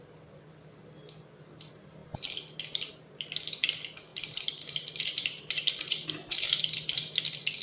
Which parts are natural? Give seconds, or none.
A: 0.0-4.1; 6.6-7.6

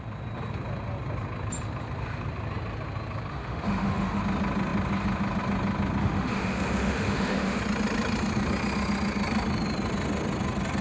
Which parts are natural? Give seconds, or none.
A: 0.0-3.3; 4.2-6.0; 7.6-10.8

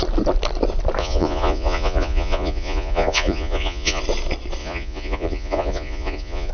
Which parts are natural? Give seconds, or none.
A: 0.0-1.0; 4.0-4.6

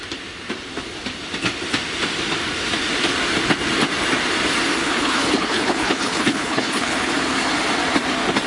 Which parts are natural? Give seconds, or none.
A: 0.0-4.8; 7.1-8.5

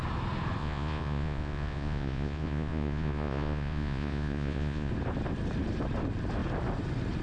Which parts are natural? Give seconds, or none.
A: 0.0-0.6; 4.9-7.2

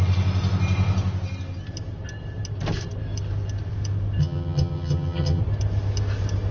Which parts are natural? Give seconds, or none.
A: 0.0-4.2; 5.4-6.5